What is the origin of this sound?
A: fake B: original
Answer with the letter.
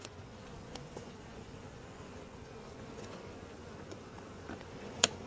A